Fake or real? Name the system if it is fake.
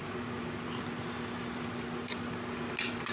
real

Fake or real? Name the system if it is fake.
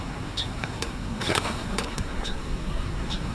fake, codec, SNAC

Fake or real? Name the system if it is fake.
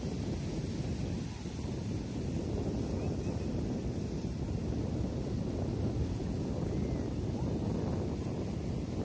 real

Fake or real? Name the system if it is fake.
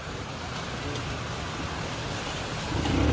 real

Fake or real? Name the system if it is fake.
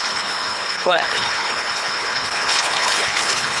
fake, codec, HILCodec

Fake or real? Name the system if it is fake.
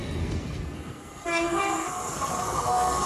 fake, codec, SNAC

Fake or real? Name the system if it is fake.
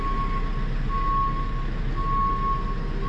real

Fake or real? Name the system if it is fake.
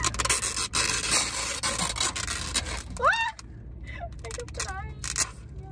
real